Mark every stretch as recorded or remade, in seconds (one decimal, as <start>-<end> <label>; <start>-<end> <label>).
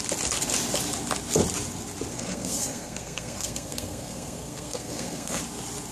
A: 0.0-2.1 recorded; 2.1-5.4 remade; 5.4-5.9 recorded